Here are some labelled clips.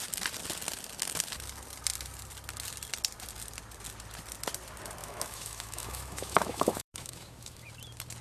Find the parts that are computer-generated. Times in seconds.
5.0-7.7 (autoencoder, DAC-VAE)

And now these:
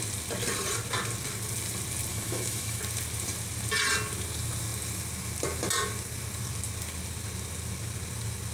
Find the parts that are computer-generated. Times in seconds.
2.1-2.8 (autoencoder, DAC-VAE)

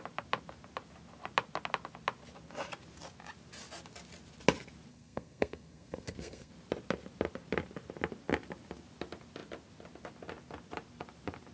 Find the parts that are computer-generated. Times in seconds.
4.9-6.5 (codec, SNAC)

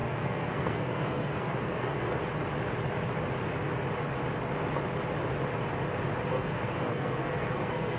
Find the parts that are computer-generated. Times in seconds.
0.0-2.2 (codec, SNAC); 6.3-8.0

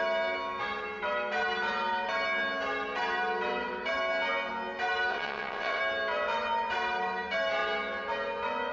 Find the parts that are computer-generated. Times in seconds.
5.1-5.8 (vocoder, WaveNeXt)

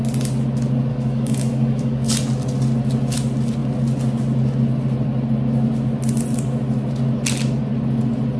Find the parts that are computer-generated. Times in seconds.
0.9-2.1 (codec, DAC)

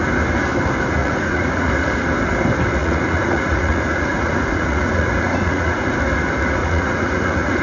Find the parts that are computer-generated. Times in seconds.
1.0-1.7 (vocoder, Vocos); 2.8-5.9; 6.6-7.6

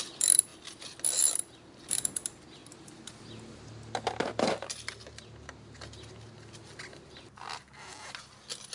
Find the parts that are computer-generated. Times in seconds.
none